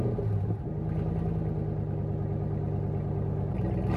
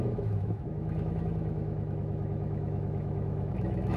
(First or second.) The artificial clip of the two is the second